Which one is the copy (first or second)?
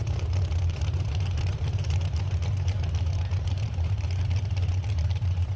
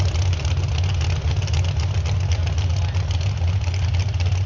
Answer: first